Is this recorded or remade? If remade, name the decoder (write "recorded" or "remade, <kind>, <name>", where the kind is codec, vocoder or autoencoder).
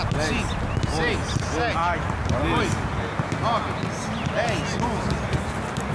recorded